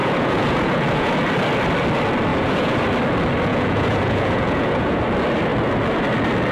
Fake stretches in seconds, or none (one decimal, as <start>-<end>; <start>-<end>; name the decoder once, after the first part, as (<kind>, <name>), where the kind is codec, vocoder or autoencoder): 0.0-1.1 (vocoder, Vocos); 2.3-2.8; 3.5-5.0